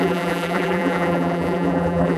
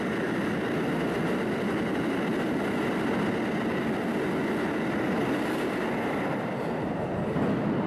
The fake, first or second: first